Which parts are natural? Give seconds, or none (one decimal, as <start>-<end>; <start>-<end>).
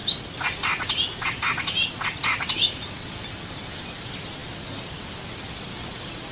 0.0-6.3